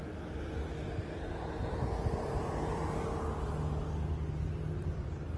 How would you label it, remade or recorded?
recorded